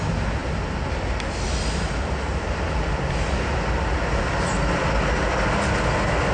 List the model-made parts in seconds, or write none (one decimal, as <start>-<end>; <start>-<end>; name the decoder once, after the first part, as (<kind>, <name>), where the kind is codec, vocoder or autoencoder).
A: none